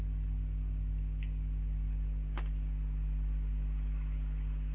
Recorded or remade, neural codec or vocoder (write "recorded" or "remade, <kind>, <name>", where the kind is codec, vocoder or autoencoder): recorded